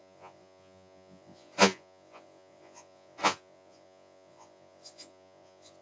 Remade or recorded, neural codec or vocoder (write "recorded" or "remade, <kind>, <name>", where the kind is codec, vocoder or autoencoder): remade, vocoder, Vocos